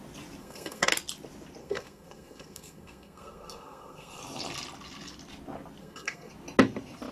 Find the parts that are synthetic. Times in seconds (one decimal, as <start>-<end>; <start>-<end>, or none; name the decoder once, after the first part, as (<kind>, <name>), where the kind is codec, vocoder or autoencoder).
0.4-0.9 (codec, SNAC); 1.6-4.2; 5.8-6.3